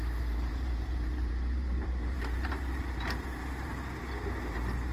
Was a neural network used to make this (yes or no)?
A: yes